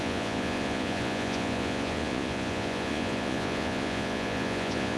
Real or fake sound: fake